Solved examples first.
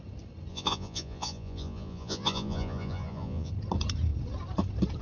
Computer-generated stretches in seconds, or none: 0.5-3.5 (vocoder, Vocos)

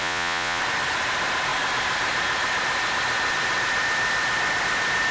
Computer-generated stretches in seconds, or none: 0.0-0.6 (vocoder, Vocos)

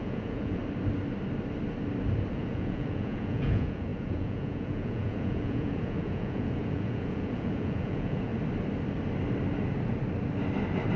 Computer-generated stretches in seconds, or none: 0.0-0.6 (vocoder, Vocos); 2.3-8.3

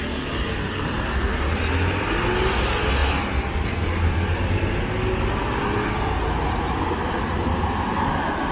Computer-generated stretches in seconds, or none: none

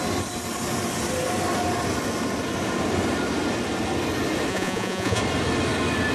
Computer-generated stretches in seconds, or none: 4.5-5.2 (vocoder, Vocos)